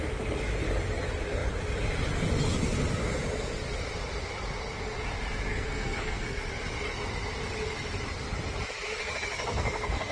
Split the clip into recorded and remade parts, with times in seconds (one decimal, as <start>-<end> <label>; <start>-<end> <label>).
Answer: 0.0-5.5 recorded; 5.5-6.5 remade; 6.5-9.5 recorded; 9.5-10.1 remade